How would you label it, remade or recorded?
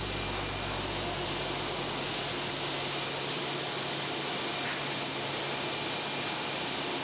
recorded